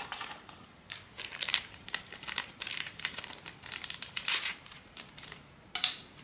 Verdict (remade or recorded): remade